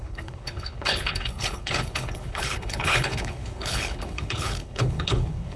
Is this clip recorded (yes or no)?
no